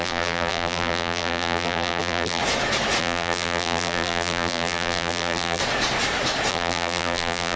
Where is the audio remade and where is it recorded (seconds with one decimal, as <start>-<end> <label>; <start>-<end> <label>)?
0.0-2.4 remade; 2.4-3.0 recorded; 3.0-5.6 remade; 5.6-6.5 recorded; 6.5-7.6 remade